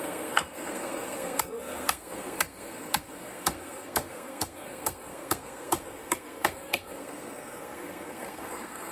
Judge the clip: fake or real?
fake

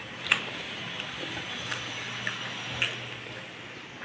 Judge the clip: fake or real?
real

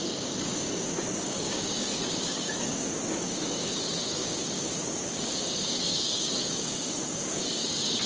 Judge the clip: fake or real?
fake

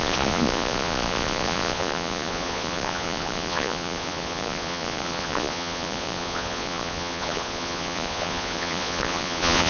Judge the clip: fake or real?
fake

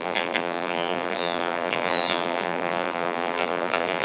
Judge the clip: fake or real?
fake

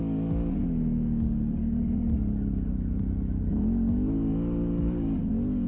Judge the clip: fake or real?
real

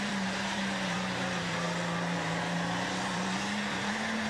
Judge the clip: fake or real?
fake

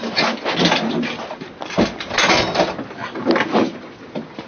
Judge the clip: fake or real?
real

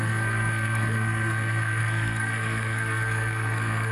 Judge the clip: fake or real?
fake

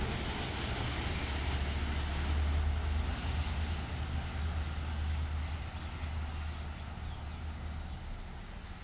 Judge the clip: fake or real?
real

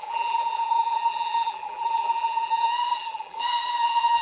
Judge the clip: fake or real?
fake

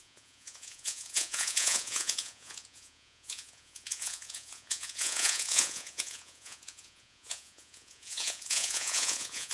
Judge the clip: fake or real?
fake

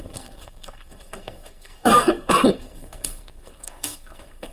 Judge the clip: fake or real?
fake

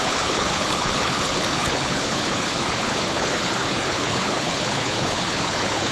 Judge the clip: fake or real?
fake